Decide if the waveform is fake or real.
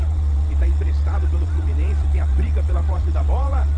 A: fake